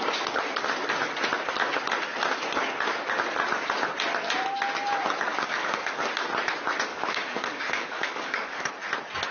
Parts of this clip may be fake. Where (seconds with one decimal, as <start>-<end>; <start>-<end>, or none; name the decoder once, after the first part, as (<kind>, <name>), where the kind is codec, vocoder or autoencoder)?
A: 5.3-6.0 (codec, DAC); 6.9-8.7